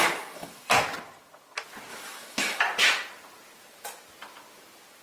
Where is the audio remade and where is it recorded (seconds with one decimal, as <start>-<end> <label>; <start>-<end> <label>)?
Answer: 0.0-0.7 remade; 0.7-1.9 recorded; 1.9-2.6 remade; 2.6-5.0 recorded